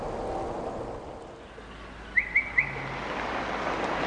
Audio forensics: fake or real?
real